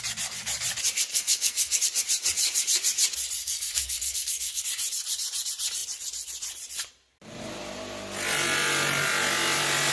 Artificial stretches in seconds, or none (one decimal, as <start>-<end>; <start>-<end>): 1.1-1.8; 3.4-4.6